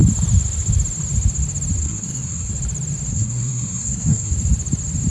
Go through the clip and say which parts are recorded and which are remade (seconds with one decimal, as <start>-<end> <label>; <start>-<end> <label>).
0.0-1.8 recorded; 1.8-2.5 remade; 2.5-3.1 recorded; 3.1-4.3 remade; 4.3-5.1 recorded